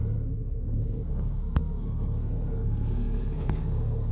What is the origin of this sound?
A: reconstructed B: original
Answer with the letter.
A